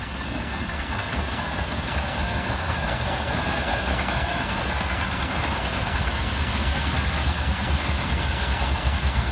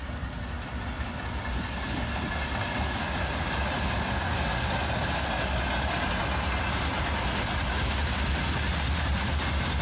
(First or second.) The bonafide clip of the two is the second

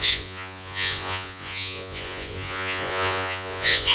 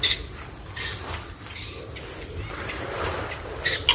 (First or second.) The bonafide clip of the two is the second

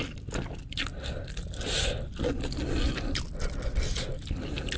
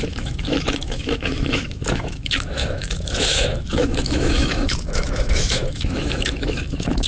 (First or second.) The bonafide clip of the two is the first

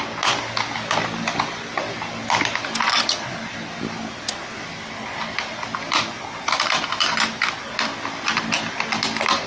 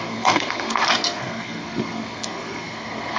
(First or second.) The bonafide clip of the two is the first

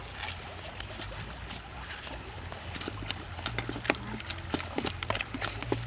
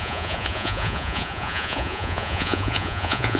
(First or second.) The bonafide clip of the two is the first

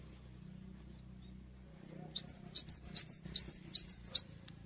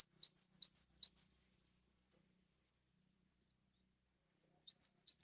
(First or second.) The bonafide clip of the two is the first